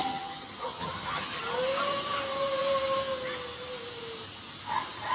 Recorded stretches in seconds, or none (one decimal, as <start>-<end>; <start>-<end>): 1.4-5.1